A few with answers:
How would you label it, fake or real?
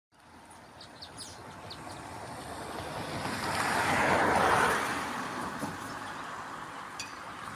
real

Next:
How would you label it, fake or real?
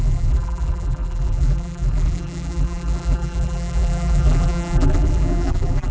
fake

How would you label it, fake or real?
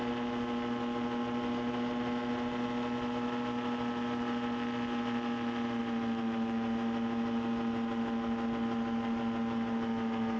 real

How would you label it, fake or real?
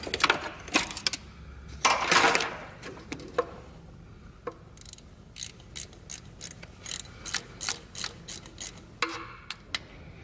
real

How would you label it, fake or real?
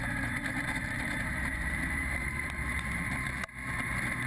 fake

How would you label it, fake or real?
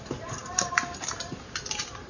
fake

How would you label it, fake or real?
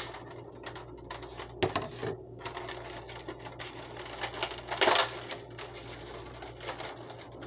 real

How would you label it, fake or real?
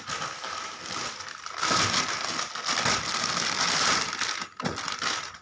real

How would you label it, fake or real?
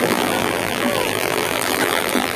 fake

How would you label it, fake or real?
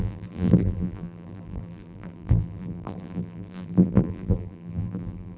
fake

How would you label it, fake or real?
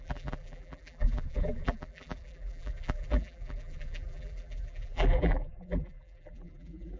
fake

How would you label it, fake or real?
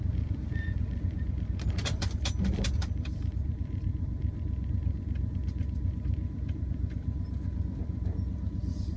fake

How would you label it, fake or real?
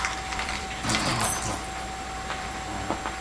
fake